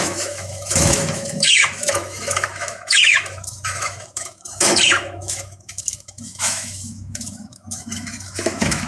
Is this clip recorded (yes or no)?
no